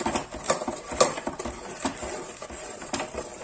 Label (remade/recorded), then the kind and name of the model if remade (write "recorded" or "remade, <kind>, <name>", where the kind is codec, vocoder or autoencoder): recorded